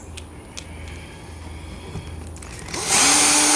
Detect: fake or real real